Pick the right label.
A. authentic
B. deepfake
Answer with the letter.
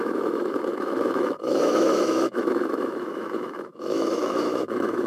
B